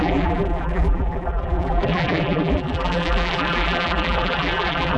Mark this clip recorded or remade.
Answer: remade